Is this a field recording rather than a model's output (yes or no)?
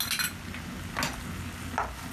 yes